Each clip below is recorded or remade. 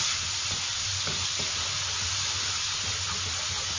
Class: recorded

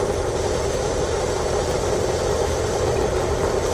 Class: recorded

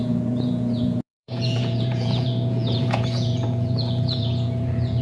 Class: remade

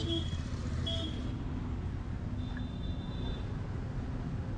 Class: recorded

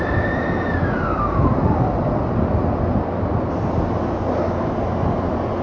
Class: recorded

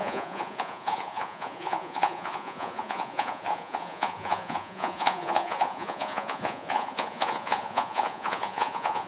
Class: remade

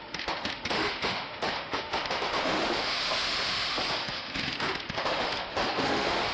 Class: remade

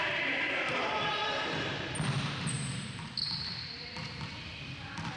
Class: remade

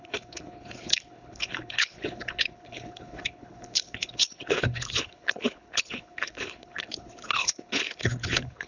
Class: remade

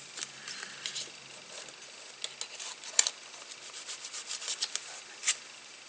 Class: recorded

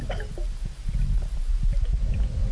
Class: recorded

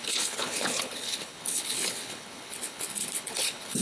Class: remade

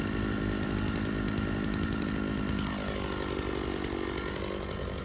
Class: recorded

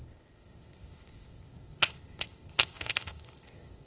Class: remade